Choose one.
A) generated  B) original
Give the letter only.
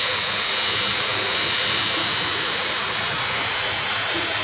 A